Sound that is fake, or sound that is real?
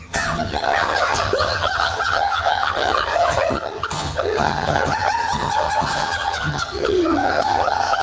fake